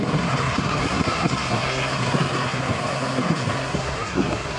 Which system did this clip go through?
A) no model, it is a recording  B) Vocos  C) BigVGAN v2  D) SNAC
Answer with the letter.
D